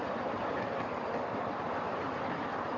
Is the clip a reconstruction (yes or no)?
no